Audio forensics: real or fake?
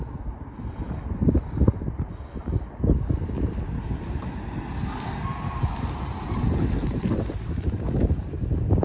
real